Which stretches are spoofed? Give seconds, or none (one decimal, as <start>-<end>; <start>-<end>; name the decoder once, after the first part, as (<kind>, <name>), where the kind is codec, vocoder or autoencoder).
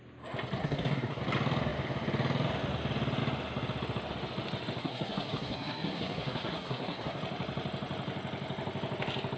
0.6-1.2 (codec, SNAC); 4.8-7.2